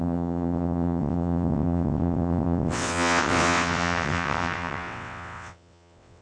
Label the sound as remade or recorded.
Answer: remade